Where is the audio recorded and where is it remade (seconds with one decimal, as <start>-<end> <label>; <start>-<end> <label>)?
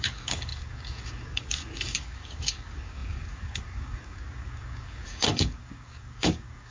0.0-6.7 remade